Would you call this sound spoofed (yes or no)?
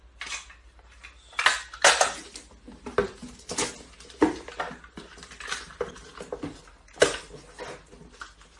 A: no